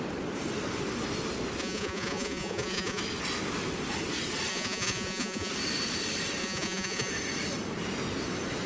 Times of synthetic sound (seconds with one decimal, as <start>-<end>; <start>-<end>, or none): 1.6-3.0; 4.5-5.5; 6.4-7.1